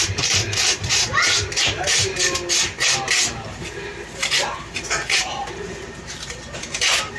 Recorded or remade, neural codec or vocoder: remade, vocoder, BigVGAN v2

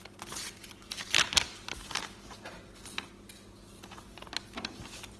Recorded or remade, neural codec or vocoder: recorded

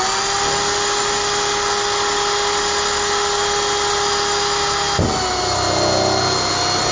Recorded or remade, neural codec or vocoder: recorded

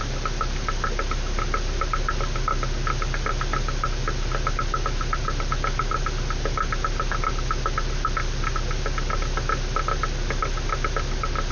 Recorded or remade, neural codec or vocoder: recorded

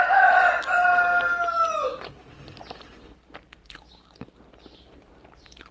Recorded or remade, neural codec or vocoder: recorded